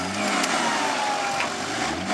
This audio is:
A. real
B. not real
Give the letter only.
A